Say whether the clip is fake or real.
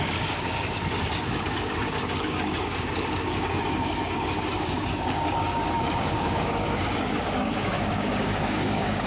fake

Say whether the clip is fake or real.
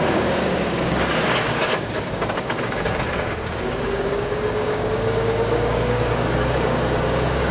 fake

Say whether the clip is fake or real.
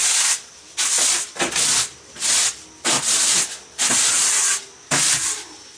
real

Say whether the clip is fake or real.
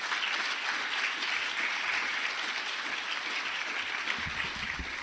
real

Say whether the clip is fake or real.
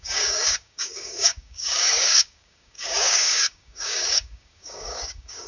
fake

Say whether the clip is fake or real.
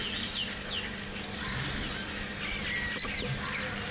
real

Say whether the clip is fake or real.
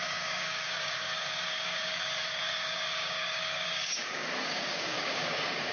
fake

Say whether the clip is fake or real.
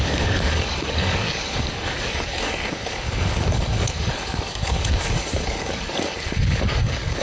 fake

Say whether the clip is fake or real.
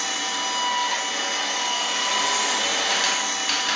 real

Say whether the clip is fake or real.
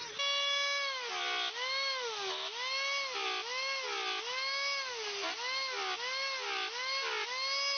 real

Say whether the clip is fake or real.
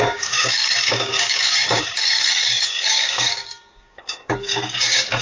fake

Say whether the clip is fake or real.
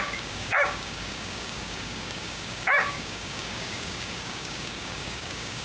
fake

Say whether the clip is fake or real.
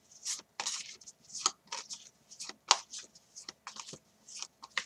real